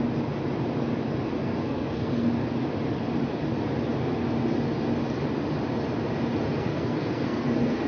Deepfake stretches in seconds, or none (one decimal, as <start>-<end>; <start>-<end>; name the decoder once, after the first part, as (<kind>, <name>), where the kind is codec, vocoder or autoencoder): 1.4-2.3 (codec, SNAC); 6.5-7.9

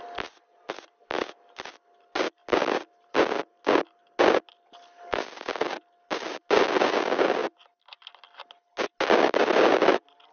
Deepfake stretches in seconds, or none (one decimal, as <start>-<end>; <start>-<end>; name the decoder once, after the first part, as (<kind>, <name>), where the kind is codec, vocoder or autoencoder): none